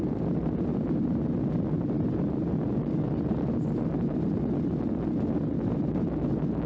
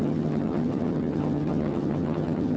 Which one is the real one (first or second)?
first